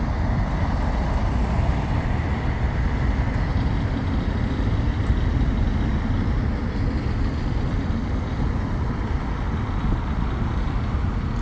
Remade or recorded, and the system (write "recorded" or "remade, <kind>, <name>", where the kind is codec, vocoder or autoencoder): recorded